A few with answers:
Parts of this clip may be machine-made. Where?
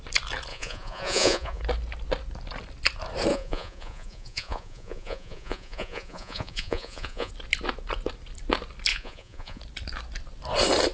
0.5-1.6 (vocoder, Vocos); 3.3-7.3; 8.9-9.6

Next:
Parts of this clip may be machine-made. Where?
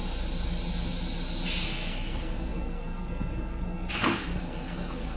1.6-5.2 (codec, SNAC)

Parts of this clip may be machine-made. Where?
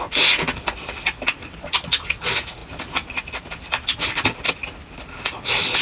none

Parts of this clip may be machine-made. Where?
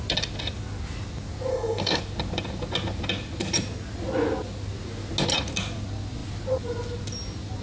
1.5-2.0 (codec, SNAC)